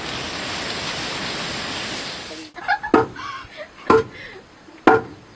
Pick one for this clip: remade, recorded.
recorded